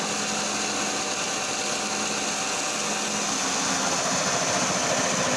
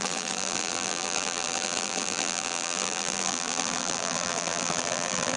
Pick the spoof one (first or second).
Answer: second